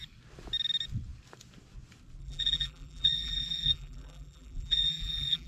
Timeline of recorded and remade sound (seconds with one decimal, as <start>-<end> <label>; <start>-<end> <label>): 0.0-2.2 recorded; 2.2-5.5 remade